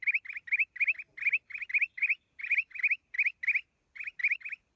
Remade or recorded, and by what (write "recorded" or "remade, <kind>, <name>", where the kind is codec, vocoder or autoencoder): recorded